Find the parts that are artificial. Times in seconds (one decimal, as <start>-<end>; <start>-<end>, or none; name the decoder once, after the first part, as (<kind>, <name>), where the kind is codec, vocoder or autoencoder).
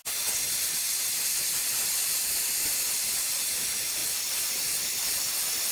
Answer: none